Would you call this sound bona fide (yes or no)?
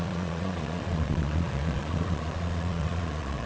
no